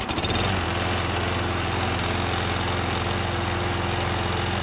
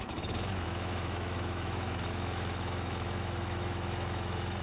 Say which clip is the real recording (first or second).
first